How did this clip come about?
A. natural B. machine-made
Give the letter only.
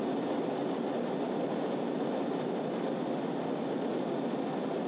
A